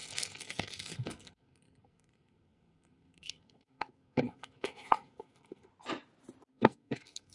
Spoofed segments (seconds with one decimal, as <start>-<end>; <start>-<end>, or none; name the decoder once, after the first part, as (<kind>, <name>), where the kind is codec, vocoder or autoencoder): 0.0-5.7 (codec, SNAC); 6.5-7.3